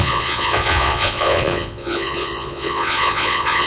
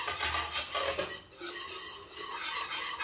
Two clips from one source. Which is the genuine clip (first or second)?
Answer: second